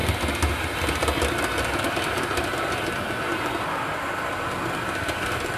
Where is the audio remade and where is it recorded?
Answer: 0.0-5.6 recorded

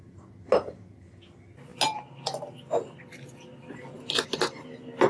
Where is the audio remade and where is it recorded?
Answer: 0.0-5.1 recorded